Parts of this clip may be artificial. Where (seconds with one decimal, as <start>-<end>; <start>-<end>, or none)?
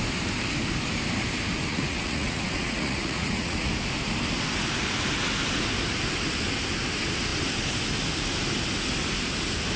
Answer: 1.7-3.7